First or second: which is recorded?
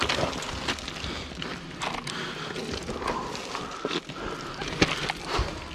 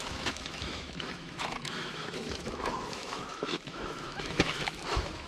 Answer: first